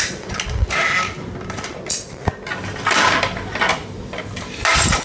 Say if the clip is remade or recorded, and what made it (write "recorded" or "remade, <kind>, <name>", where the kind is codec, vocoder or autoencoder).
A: recorded